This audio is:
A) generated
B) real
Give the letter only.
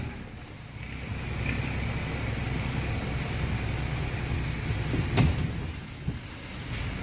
B